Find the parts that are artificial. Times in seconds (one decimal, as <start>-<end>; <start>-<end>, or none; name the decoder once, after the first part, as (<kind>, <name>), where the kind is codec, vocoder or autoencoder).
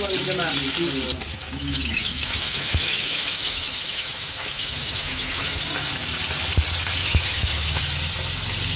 1.3-5.6 (autoencoder, DAC-VAE); 7.0-7.8